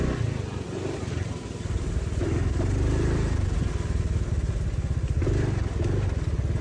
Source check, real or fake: real